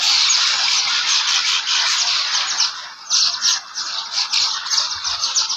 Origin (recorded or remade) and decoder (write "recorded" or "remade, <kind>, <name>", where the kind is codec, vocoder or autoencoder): recorded